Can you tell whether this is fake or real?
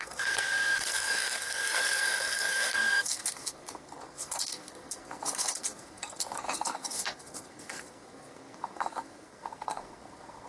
fake